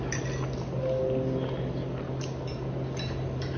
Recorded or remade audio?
recorded